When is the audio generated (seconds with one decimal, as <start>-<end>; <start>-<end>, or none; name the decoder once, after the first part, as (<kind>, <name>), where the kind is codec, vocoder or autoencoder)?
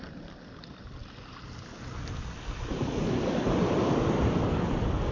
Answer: none